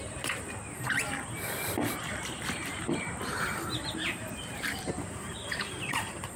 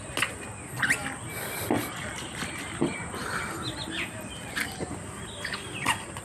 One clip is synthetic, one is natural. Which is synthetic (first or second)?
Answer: first